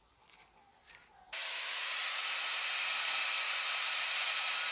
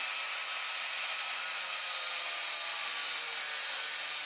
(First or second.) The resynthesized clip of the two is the first